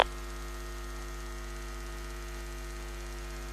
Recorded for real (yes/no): yes